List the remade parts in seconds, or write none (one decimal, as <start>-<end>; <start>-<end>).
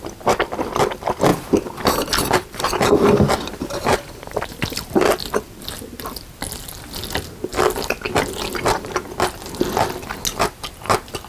1.3-2.6